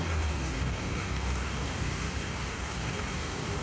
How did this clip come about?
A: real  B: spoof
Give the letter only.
B